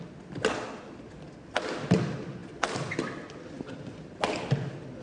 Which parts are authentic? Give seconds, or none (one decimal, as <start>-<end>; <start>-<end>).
0.0-5.0